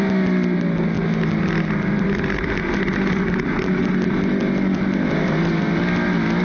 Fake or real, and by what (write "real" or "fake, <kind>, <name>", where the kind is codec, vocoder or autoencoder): real